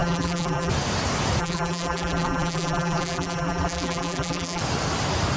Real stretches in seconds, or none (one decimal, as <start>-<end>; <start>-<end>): 0.7-1.4; 4.6-5.4